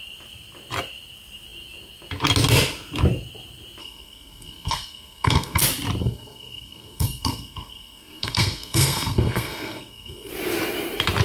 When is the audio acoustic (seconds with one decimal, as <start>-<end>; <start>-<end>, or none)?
0.0-3.8; 5.6-6.0; 10.3-11.2